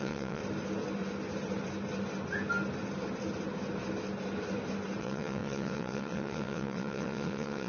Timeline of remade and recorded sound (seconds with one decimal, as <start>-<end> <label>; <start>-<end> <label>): 0.0-0.4 remade; 0.4-5.0 recorded; 5.0-7.7 remade